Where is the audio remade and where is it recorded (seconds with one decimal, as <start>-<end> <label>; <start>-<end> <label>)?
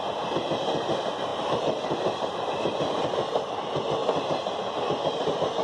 0.0-1.3 recorded; 1.3-3.5 remade; 3.5-5.6 recorded